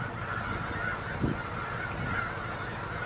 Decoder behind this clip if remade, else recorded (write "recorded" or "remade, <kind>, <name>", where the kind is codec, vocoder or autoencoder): recorded